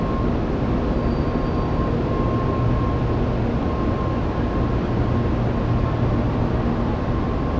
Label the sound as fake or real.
real